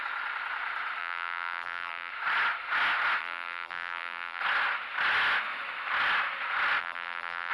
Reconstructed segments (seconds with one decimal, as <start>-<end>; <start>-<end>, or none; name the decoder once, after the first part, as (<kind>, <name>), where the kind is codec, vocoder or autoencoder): 1.0-2.1 (vocoder, BigVGAN v2); 3.2-4.4; 6.8-7.5